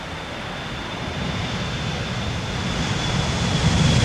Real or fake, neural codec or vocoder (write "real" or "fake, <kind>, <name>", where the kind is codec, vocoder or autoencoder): real